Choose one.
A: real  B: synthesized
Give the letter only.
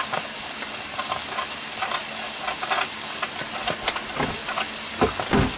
A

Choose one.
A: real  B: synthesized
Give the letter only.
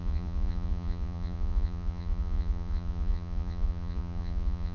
B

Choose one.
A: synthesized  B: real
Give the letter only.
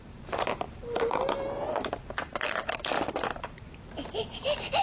A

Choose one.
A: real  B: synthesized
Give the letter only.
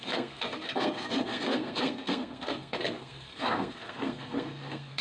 B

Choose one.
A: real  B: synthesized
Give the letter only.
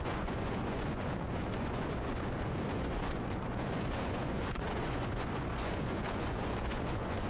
B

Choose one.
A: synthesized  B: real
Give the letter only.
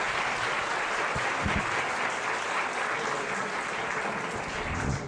B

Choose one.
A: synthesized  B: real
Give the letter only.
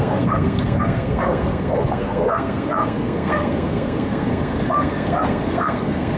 A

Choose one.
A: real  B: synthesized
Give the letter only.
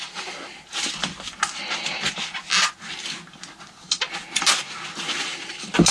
A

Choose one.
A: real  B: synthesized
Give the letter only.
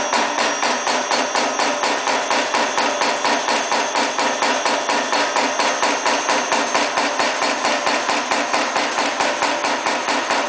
A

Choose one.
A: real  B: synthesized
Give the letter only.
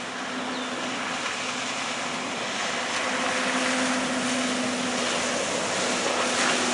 A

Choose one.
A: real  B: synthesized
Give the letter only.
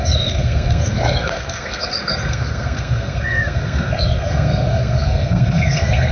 B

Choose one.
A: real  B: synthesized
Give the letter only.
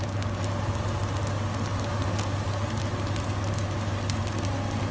A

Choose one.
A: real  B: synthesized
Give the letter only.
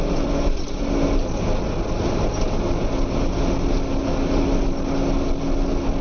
A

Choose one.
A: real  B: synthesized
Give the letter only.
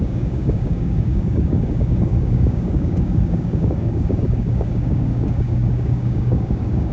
B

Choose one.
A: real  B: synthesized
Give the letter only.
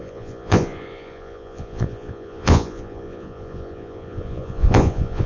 B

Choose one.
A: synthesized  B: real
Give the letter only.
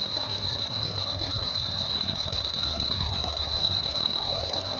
A